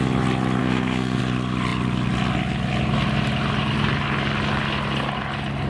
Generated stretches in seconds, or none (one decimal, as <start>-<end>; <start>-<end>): 0.6-1.2